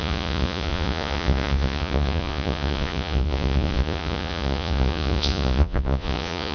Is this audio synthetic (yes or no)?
yes